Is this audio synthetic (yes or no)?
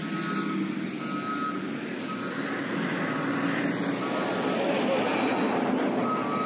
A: no